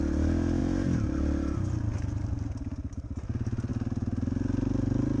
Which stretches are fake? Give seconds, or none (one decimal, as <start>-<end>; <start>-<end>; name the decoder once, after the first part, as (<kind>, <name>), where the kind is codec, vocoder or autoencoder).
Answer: none